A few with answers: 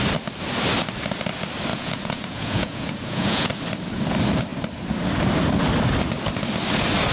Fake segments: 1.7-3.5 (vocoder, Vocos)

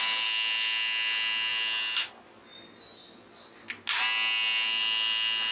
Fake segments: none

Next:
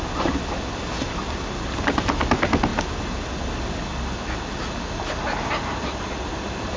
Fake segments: none

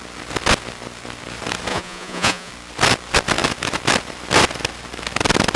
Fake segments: 1.7-2.5 (vocoder, Vocos)

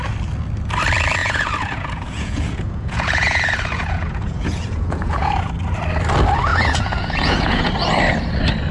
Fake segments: 1.2-5.5 (vocoder, Vocos); 6.5-7.7